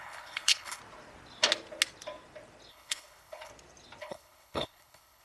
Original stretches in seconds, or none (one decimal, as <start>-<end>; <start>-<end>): 0.8-2.7; 3.5-4.0